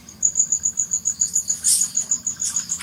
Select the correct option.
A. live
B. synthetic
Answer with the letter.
A